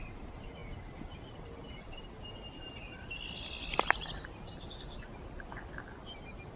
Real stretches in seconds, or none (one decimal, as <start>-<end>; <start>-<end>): 0.0-6.6